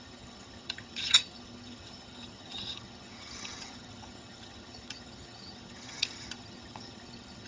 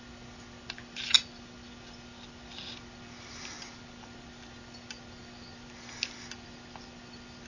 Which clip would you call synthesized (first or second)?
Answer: first